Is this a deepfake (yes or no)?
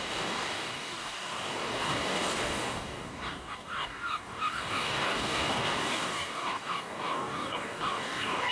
yes